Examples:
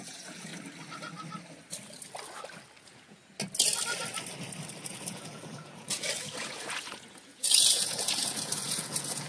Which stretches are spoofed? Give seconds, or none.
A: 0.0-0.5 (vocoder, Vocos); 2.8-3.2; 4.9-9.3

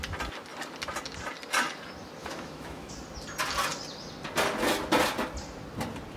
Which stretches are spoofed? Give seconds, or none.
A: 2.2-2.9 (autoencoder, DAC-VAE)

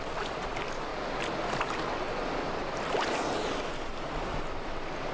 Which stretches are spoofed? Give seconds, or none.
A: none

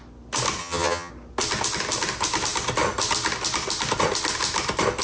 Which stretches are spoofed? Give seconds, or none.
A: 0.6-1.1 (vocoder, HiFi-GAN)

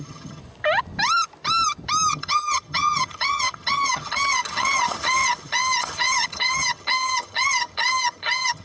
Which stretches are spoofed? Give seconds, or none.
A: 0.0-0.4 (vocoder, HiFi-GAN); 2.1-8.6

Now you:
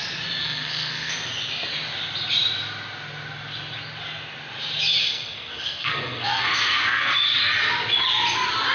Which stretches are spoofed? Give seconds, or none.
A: 0.4-1.1 (codec, SNAC); 5.0-7.1